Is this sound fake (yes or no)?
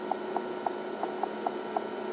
no